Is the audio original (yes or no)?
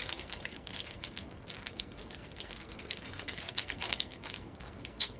no